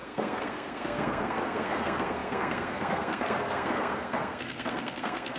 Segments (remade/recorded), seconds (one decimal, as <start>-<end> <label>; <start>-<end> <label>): 0.0-5.4 remade

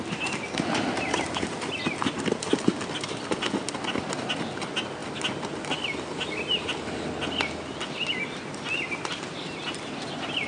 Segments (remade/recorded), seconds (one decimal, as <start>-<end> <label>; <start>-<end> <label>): 0.0-10.5 recorded

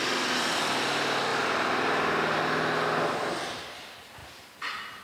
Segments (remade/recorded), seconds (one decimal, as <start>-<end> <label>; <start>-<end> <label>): 0.0-1.3 recorded; 1.3-2.4 remade; 2.4-4.2 recorded; 4.2-5.0 remade

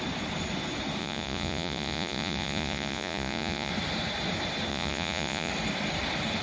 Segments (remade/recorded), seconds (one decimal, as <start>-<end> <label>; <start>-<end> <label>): 0.0-1.0 recorded; 1.0-3.7 remade; 3.7-4.7 recorded; 4.7-5.5 remade; 5.5-6.4 recorded

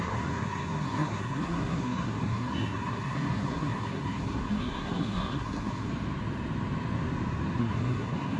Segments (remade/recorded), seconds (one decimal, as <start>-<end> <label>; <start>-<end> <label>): 0.0-5.9 remade; 5.9-7.6 recorded; 7.6-8.4 remade

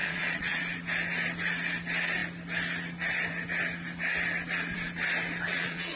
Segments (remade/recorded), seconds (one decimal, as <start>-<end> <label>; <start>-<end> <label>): 0.0-0.6 remade; 0.6-5.5 recorded; 5.5-6.0 remade

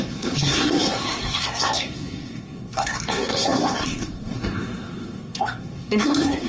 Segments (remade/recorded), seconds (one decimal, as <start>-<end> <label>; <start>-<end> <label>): 0.0-6.5 remade